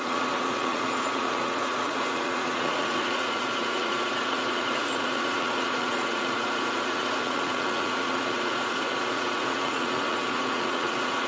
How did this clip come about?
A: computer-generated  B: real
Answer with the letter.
A